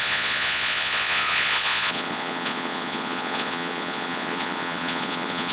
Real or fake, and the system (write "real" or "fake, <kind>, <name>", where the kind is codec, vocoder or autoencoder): fake, vocoder, Vocos